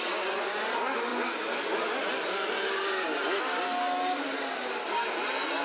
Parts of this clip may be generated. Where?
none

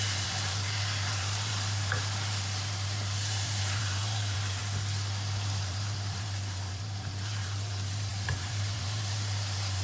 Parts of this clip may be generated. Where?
0.0-4.6 (vocoder, BigVGAN v2); 5.6-9.8

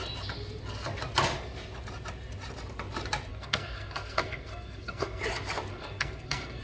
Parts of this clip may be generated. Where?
3.3-5.2 (codec, SNAC); 5.7-6.6